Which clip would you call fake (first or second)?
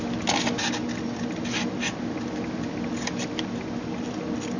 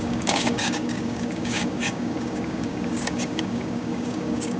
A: second